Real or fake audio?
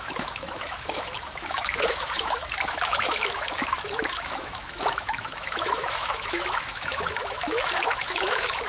fake